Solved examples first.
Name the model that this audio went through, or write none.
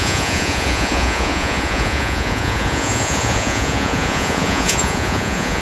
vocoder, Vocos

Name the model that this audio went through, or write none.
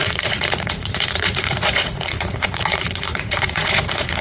vocoder, Vocos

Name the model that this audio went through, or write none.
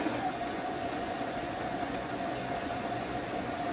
vocoder, Vocos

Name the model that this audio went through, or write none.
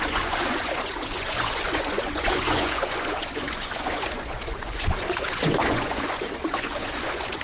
vocoder, Vocos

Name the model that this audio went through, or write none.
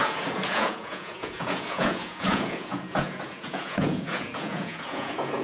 vocoder, Vocos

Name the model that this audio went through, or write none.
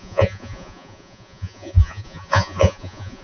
vocoder, Vocos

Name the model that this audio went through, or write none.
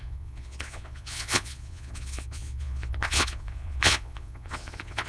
vocoder, Vocos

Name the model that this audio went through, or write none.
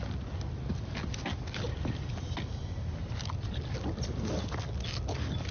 none